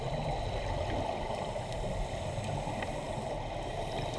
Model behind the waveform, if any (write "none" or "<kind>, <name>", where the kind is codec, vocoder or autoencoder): none